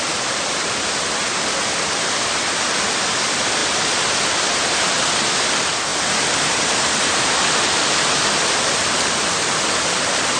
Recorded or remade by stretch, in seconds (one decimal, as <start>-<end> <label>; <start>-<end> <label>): 0.0-5.9 recorded; 5.9-7.3 remade; 7.3-10.4 recorded